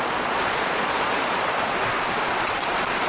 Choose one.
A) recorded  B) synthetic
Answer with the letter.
B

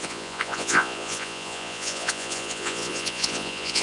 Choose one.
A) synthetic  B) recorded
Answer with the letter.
A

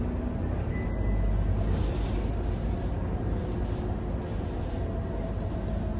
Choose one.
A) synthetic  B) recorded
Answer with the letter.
B